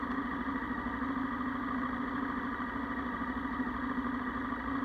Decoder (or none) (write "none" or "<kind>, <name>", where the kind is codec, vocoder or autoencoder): none